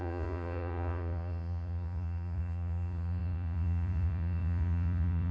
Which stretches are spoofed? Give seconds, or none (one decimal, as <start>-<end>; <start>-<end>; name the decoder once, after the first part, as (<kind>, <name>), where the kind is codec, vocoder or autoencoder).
0.0-5.3 (vocoder, Vocos)